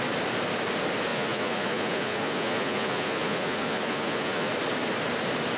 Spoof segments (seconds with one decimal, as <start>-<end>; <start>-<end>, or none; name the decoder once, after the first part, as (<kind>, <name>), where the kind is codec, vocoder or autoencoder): 1.1-4.5 (vocoder, Vocos)